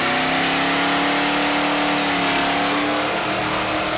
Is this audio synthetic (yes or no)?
no